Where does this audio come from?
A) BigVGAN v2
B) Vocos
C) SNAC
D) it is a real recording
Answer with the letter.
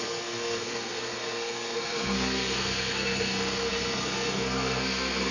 C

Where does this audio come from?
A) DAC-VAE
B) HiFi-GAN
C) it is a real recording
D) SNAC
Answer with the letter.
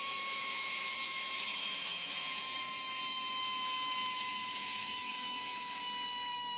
A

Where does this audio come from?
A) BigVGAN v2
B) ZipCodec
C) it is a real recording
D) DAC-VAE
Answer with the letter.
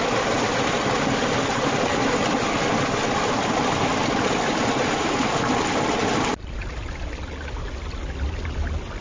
C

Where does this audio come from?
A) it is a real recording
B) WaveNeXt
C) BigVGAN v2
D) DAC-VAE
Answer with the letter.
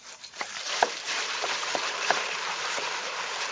C